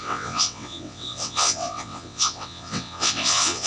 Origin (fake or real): fake